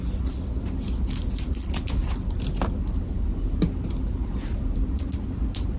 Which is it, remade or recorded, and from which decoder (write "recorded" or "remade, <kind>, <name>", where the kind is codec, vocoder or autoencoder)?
recorded